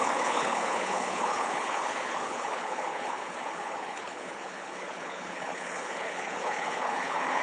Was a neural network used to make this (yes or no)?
yes